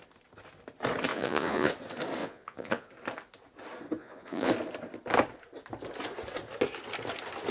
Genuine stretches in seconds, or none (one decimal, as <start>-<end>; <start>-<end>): 0.0-1.1; 1.7-2.2; 2.9-4.0; 4.5-7.5